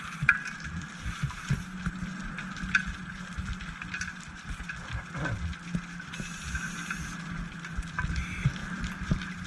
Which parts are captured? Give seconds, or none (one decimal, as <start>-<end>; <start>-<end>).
0.0-8.6